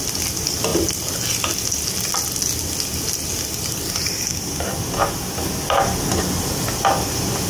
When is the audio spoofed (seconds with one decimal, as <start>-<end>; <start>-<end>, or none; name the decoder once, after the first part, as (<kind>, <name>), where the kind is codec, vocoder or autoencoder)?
none